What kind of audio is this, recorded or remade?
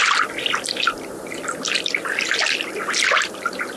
recorded